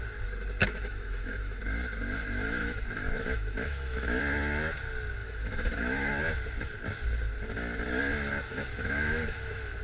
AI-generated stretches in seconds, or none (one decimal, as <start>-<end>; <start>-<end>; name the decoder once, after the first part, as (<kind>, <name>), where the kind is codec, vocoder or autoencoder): 0.6-1.6 (autoencoder, DAC-VAE); 2.6-4.2; 5.2-6.1; 8.5-9.8